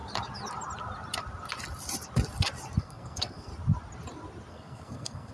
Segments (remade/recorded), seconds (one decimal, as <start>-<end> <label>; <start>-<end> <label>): 0.0-2.8 recorded; 2.8-3.5 remade; 3.5-4.5 recorded; 4.5-5.3 remade